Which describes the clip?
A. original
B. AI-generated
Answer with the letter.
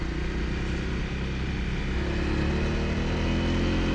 A